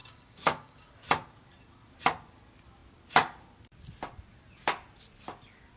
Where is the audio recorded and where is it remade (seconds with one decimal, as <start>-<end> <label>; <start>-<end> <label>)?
0.0-0.9 remade; 0.9-5.8 recorded

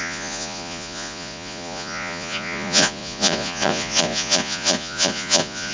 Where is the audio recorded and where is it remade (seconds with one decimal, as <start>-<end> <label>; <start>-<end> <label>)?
0.0-5.7 remade

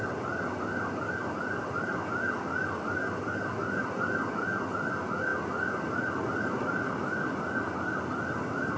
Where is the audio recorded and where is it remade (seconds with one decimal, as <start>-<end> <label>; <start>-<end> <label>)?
0.0-8.8 recorded

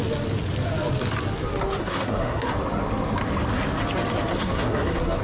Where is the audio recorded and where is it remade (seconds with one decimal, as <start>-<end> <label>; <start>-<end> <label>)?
0.0-1.8 recorded; 1.8-2.5 remade; 2.5-4.3 recorded; 4.3-5.2 remade

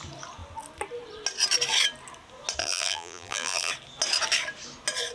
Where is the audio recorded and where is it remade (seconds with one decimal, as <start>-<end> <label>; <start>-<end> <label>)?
0.0-2.6 recorded; 2.6-3.7 remade; 3.7-5.1 recorded

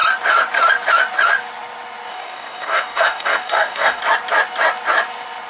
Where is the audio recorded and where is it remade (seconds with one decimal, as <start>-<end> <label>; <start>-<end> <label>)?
0.0-2.1 recorded; 2.1-4.0 remade; 4.0-5.5 recorded